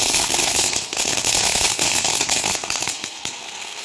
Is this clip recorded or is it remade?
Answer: remade